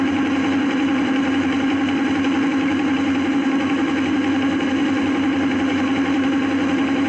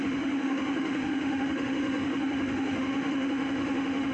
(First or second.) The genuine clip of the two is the first